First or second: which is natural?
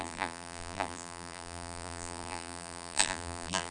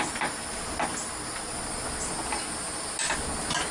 second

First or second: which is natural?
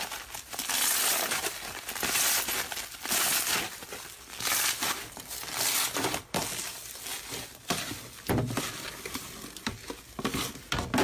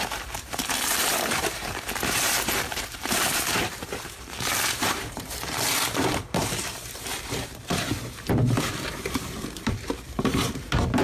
first